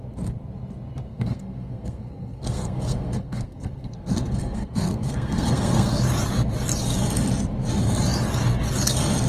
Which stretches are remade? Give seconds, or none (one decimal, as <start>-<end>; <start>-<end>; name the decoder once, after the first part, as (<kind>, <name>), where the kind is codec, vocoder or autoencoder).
1.1-6.0 (codec, SNAC)